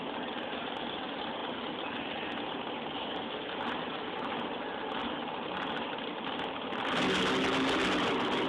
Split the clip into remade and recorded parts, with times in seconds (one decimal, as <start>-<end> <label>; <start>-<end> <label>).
0.0-8.5 recorded